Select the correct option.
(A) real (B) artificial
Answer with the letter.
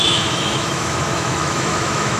B